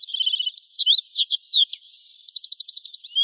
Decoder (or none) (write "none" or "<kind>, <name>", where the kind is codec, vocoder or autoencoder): vocoder, BigVGAN v2